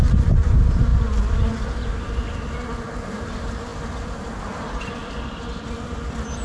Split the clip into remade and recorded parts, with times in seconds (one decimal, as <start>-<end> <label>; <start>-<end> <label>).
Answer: 0.0-6.4 recorded